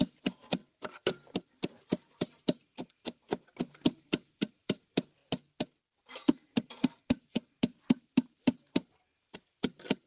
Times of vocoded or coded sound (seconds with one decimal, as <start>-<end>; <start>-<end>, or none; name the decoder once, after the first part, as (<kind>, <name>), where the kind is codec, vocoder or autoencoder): 0.0-5.2 (vocoder, BigVGAN v2); 6.0-10.1